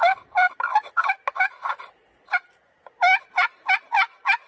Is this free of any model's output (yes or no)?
yes